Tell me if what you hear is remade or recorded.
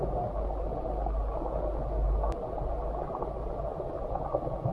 recorded